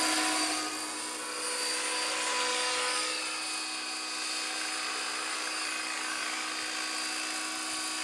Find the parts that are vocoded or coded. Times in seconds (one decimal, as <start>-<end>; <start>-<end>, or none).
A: 2.5-3.2; 5.3-6.5